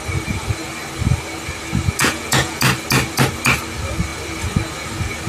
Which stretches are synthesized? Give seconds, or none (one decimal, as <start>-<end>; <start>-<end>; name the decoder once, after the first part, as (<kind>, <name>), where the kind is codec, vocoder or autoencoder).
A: 2.0-2.6 (vocoder, Vocos)